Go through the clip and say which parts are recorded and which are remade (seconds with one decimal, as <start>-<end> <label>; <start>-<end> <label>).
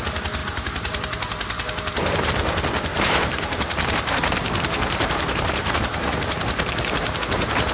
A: 0.0-0.4 recorded; 0.4-2.3 remade; 2.3-2.9 recorded; 2.9-7.2 remade; 7.2-7.7 recorded